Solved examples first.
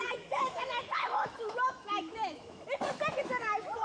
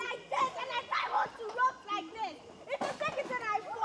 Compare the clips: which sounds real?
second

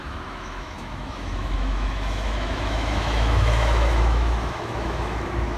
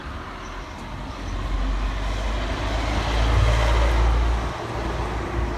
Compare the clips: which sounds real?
second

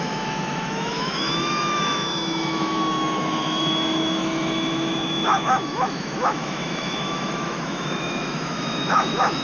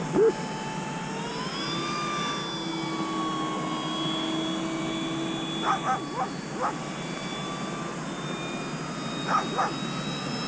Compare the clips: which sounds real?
second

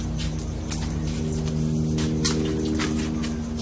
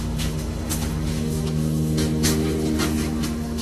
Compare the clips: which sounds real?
first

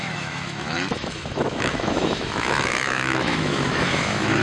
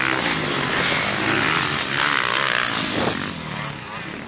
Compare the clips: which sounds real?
second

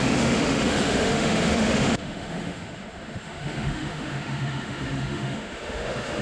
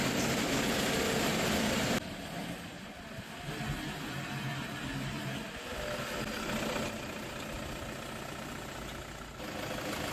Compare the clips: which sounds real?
second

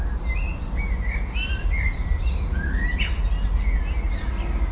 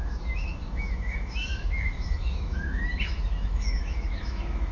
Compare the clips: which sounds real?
first